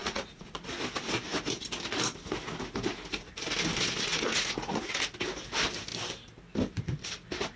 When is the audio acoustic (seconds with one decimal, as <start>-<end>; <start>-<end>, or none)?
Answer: 0.7-4.1; 4.8-7.6